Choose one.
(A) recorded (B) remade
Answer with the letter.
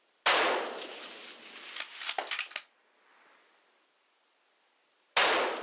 A